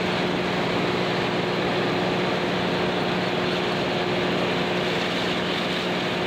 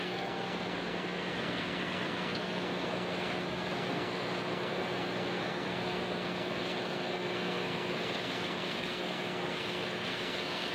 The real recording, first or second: first